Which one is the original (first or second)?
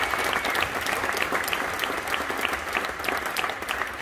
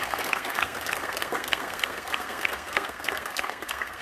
first